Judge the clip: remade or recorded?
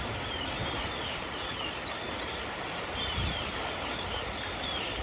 recorded